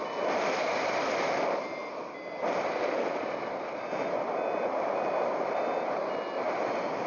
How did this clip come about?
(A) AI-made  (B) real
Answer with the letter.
B